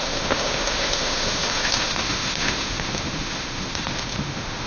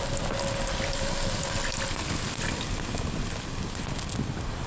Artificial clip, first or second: first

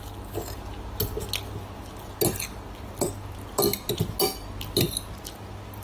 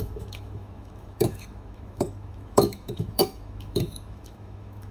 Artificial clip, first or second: second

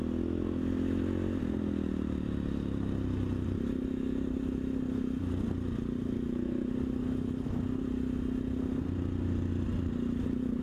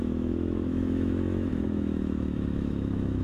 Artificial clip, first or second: second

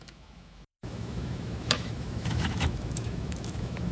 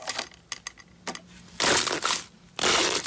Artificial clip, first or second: first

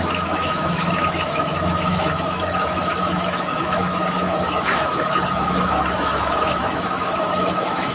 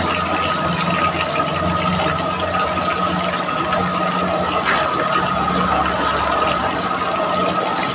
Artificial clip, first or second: first